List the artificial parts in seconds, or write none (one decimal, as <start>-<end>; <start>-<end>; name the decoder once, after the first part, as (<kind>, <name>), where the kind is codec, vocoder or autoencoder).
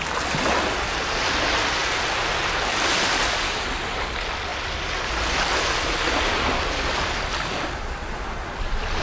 none